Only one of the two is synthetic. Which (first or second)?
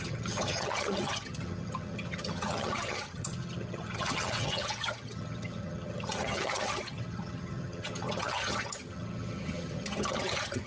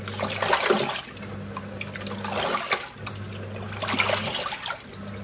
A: first